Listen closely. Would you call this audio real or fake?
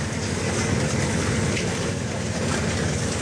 fake